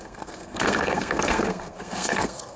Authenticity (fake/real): fake